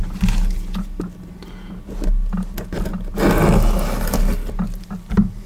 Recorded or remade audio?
recorded